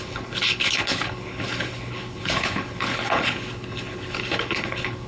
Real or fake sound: fake